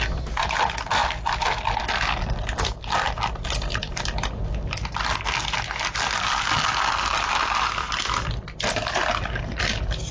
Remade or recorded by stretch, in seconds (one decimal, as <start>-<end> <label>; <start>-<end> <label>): 0.0-10.1 recorded